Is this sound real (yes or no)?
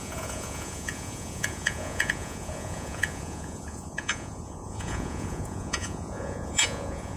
no